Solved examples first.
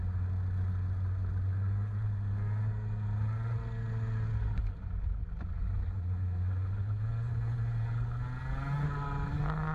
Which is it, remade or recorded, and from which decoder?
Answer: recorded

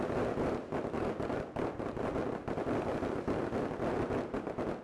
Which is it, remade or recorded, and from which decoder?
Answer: recorded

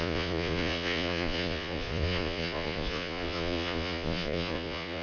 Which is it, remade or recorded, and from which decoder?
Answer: remade, vocoder, Vocos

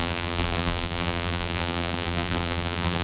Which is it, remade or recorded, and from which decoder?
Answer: remade, vocoder, BigVGAN v2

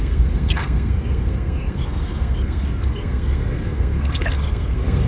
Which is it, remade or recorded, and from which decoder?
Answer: remade, codec, SNAC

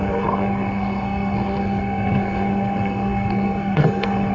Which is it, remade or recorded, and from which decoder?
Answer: remade, codec, SNAC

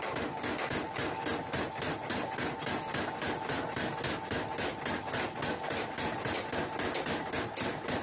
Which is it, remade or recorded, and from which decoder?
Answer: recorded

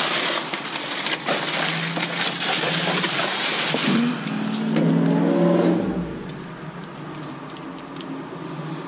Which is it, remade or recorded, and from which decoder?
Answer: recorded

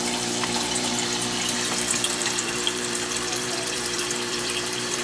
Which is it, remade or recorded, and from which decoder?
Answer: remade, vocoder, BigVGAN v2